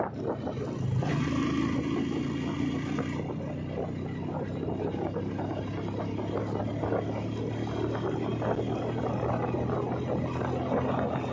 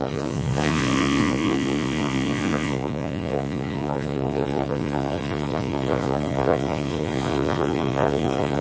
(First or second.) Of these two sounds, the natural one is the first